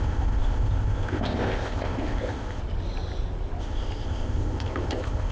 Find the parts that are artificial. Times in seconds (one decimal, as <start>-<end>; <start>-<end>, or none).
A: 0.0-2.6; 3.6-5.3